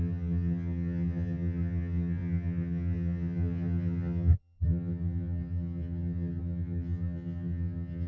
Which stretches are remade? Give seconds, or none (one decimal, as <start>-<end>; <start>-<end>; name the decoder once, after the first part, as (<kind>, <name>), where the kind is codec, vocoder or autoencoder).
0.0-8.1 (vocoder, HiFi-GAN)